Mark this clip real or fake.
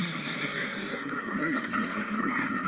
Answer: fake